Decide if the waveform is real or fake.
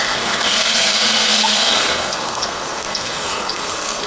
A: fake